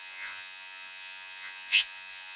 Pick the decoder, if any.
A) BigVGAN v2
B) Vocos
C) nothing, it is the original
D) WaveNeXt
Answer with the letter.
B